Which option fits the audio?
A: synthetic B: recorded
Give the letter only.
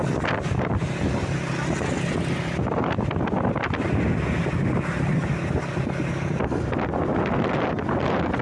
B